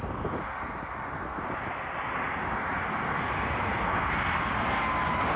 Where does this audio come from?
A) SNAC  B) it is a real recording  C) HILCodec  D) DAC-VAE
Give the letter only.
B